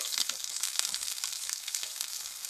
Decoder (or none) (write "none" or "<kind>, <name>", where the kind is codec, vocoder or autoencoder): codec, DAC